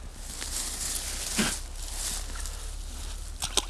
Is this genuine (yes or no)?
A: yes